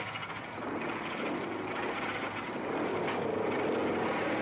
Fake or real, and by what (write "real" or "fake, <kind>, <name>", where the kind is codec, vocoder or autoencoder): real